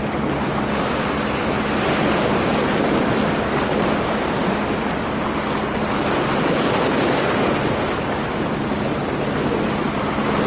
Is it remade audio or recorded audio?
recorded